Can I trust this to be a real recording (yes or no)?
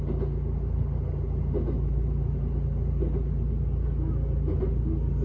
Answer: yes